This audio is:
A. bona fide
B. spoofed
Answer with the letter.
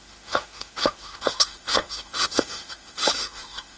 B